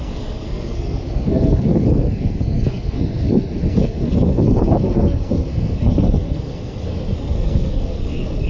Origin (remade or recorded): remade